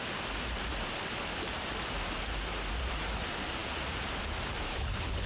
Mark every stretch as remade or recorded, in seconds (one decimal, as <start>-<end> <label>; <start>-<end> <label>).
0.0-4.7 recorded; 4.7-5.3 remade